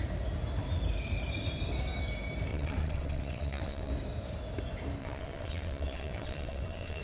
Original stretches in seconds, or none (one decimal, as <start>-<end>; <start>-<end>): 0.0-2.5; 3.9-5.0